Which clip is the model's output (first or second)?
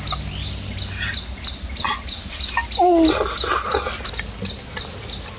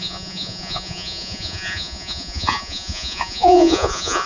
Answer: second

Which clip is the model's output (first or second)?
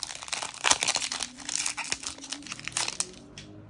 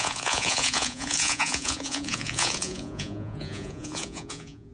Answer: second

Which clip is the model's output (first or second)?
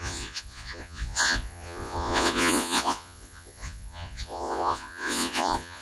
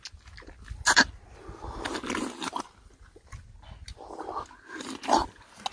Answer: first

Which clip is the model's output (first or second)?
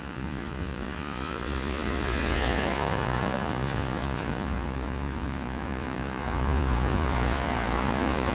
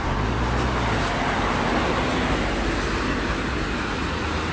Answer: first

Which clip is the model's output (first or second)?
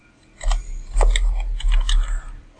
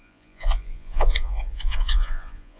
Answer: second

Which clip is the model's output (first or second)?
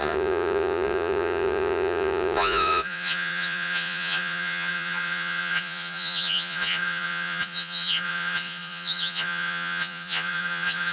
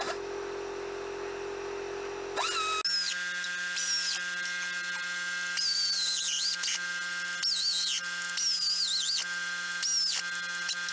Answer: first